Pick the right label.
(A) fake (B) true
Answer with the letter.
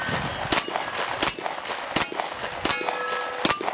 B